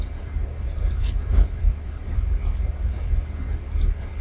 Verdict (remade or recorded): remade